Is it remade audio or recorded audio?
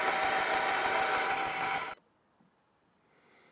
recorded